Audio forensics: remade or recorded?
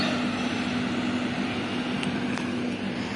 recorded